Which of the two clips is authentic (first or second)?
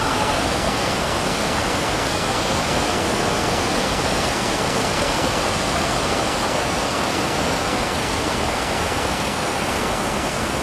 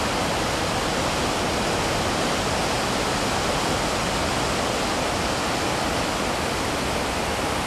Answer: second